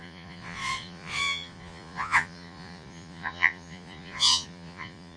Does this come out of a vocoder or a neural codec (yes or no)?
yes